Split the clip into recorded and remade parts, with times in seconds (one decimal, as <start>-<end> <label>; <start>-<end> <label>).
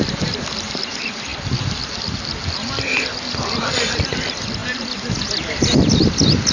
0.0-6.5 recorded